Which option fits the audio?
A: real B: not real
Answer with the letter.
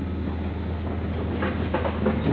A